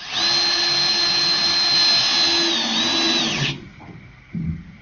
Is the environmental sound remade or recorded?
recorded